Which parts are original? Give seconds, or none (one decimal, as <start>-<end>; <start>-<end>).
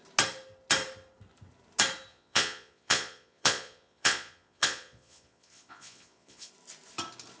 0.0-2.1; 6.5-7.4